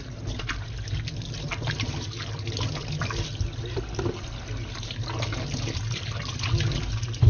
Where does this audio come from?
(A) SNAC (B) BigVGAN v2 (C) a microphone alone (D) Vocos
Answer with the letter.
C